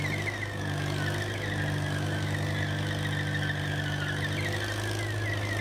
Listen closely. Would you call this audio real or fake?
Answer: real